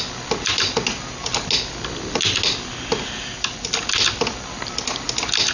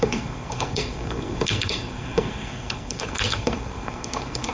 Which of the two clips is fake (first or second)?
second